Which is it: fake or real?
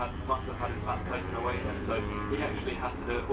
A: real